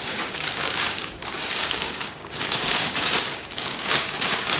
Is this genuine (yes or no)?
no